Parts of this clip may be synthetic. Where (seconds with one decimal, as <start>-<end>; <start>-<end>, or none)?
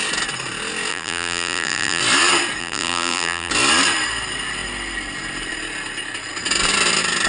0.9-2.0; 2.6-3.5